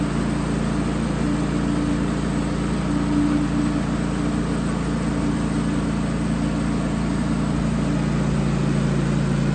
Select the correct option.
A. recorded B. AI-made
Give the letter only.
A